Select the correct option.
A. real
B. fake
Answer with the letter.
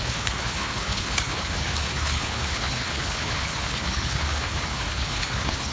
B